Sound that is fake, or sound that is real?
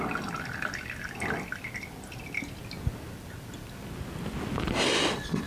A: real